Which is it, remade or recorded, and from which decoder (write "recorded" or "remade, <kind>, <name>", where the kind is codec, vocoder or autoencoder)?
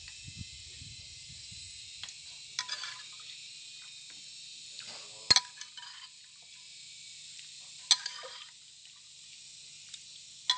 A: recorded